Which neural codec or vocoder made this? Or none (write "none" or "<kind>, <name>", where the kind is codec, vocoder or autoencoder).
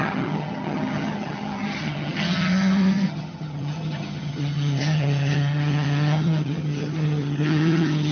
vocoder, HiFi-GAN